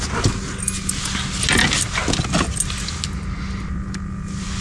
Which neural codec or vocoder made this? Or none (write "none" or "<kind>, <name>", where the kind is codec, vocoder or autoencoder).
none